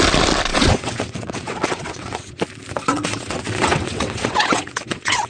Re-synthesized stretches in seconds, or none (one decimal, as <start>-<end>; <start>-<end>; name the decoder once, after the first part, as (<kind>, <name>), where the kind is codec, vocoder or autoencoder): 0.5-2.4 (vocoder, WaveNeXt); 2.9-5.3